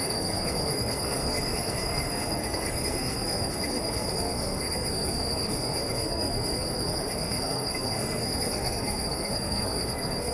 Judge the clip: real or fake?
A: fake